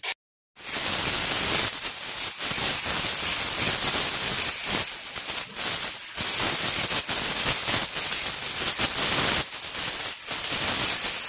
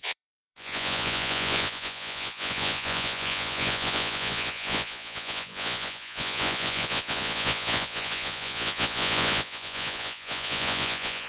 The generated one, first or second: second